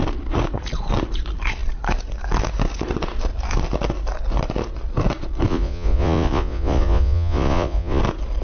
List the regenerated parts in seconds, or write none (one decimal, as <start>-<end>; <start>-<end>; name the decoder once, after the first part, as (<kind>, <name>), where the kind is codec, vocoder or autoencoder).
5.5-8.0 (vocoder, Vocos)